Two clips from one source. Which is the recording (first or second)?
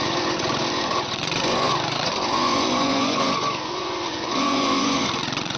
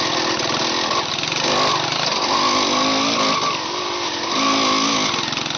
second